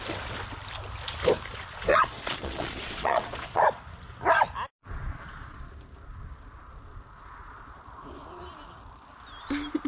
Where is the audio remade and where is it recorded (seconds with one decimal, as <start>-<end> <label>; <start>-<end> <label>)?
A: 0.0-1.9 recorded; 1.9-3.6 remade; 3.6-4.8 recorded; 4.8-5.7 remade; 5.7-9.9 recorded